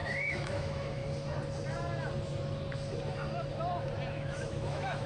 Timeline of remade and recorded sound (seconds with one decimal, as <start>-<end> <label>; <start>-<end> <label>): 0.0-1.0 remade; 1.0-4.1 recorded; 4.1-5.1 remade